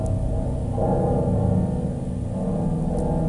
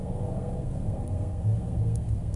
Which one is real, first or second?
first